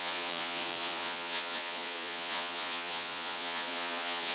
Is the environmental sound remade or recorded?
remade